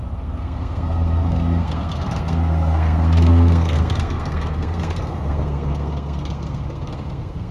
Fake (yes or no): yes